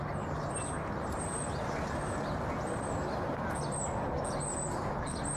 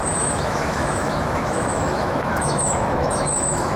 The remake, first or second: second